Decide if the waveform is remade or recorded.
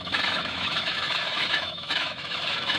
remade